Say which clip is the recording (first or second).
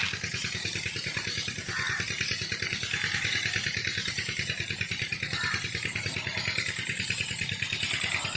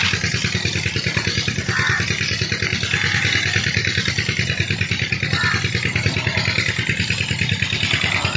second